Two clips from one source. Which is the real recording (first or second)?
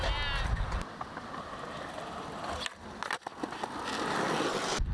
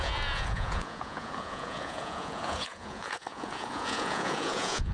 first